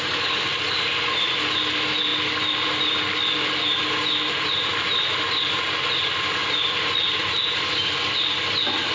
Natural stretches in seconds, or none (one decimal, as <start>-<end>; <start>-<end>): 0.0-8.9